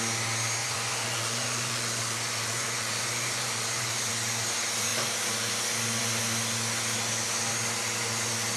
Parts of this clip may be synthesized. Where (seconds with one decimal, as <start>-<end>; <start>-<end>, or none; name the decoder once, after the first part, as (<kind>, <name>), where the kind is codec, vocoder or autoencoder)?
0.6-4.1 (vocoder, Vocos)

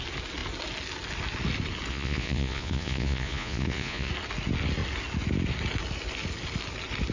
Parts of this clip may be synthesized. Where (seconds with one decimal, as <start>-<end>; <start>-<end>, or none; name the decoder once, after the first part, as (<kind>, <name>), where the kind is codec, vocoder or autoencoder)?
1.9-4.1 (vocoder, Vocos)

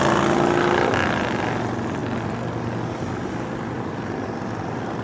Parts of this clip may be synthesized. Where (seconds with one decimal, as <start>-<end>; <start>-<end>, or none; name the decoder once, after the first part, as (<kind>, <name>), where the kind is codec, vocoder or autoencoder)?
none

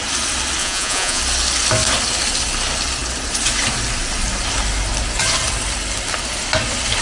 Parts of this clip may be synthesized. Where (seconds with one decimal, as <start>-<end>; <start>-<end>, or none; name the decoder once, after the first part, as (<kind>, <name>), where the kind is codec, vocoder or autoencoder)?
0.6-1.2 (vocoder, Vocos)

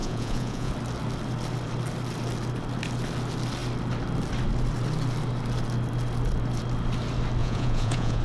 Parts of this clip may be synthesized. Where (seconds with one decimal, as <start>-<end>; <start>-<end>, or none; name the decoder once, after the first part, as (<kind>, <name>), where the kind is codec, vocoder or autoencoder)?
0.0-0.7 (vocoder, Vocos); 7.4-8.2

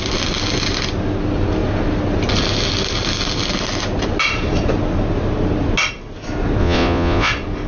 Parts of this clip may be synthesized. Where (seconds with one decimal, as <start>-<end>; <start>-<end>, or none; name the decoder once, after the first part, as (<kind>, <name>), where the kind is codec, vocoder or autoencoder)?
6.6-7.3 (vocoder, Vocos)

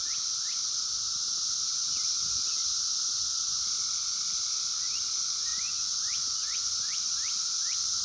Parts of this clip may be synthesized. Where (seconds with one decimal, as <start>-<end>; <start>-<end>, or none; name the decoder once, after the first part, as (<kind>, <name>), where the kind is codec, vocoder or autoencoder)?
2.9-3.6 (vocoder, Vocos); 5.5-7.1

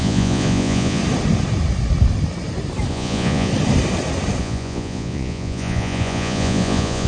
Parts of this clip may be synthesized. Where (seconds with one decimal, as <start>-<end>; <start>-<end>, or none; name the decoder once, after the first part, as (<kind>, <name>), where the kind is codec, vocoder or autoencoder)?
0.0-1.0 (vocoder, Vocos); 2.9-3.5; 4.4-7.1